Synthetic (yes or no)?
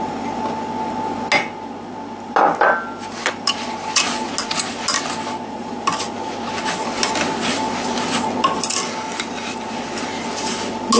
no